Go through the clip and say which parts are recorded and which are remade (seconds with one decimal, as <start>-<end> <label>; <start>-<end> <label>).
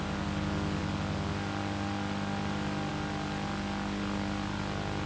0.0-5.1 recorded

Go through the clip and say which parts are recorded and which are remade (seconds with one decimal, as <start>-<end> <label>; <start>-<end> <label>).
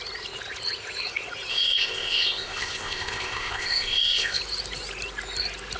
0.0-1.5 recorded; 1.5-4.4 remade; 4.4-5.8 recorded